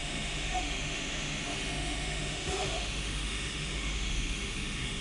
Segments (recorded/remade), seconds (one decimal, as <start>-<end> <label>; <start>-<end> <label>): 0.0-5.0 remade